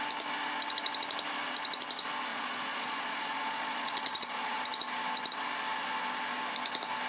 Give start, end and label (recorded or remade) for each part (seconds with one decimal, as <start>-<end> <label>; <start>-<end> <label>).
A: 0.0-2.3 recorded; 2.3-4.6 remade; 4.6-7.1 recorded

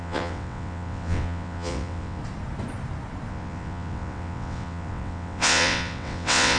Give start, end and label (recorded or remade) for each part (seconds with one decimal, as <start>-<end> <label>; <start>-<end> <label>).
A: 0.0-2.2 remade; 2.2-3.3 recorded; 3.3-6.6 remade